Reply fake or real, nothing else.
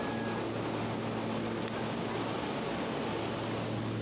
real